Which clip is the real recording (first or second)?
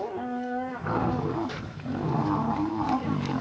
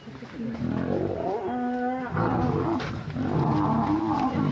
second